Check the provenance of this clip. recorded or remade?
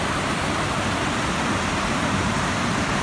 recorded